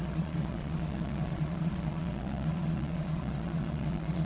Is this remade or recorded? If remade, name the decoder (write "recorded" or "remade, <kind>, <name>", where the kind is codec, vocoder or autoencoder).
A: remade, vocoder, Vocos